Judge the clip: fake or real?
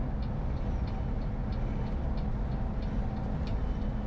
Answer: real